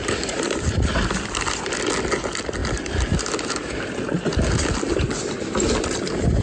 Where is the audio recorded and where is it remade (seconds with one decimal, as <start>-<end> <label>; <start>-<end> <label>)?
0.0-0.9 remade; 0.9-6.4 recorded